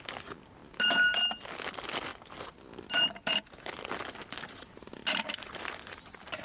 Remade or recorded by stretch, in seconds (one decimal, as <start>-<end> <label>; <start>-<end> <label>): 0.0-6.4 recorded